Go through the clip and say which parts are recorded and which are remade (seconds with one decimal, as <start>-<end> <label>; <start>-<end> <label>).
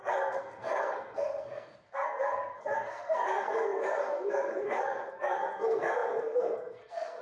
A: 0.0-7.2 remade